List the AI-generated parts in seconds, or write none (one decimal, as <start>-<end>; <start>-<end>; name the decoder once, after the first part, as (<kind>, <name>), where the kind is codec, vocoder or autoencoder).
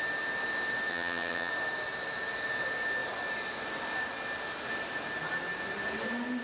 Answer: 0.9-1.5 (vocoder, HiFi-GAN)